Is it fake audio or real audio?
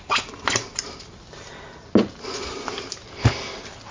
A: real